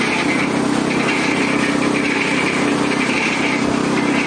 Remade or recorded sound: recorded